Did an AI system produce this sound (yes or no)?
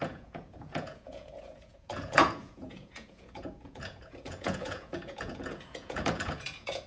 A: yes